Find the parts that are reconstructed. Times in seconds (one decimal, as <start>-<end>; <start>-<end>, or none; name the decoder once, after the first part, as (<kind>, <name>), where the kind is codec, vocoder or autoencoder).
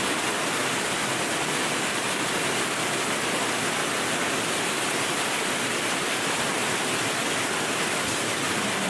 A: none